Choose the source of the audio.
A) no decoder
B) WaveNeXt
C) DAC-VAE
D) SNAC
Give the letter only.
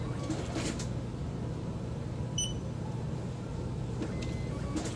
A